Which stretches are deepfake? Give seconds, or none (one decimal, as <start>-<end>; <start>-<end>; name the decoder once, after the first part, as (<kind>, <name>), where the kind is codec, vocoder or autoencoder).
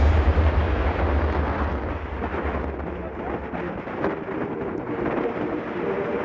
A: 0.0-0.6 (vocoder, BigVGAN v2); 4.3-6.2